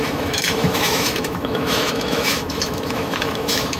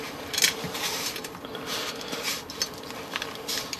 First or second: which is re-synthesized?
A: first